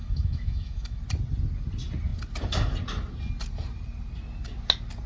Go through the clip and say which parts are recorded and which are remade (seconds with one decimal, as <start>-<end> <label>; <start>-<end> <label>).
0.0-1.0 remade; 1.0-5.1 recorded